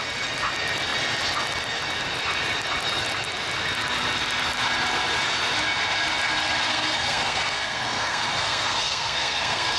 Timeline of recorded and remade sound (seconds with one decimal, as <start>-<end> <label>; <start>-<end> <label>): 0.0-6.7 recorded; 6.7-9.8 remade